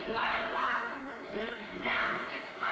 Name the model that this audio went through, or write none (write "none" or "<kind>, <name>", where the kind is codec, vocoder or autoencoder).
codec, SNAC